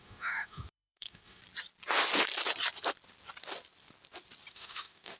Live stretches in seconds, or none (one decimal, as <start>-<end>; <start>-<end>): 1.4-4.5